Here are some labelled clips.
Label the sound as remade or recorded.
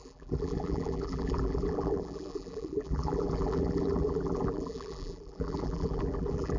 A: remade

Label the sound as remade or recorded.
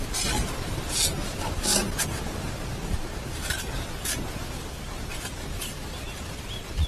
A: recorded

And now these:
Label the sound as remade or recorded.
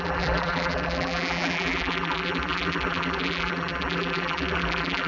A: remade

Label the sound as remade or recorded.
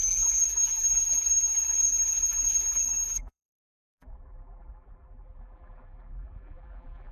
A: remade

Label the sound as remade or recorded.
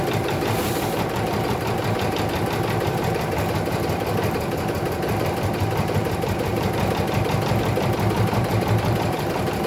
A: remade